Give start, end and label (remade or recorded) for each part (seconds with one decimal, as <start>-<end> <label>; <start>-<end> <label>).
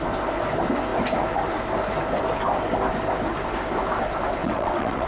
0.0-4.4 recorded; 4.4-5.1 remade